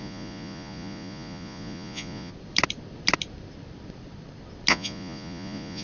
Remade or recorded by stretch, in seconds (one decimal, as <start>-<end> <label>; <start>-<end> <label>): 0.0-2.3 remade; 2.3-4.7 recorded; 4.7-5.8 remade